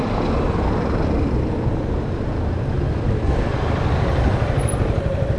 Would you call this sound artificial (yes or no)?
no